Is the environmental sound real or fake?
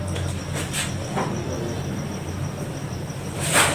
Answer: real